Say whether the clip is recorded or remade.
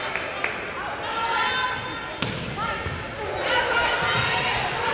recorded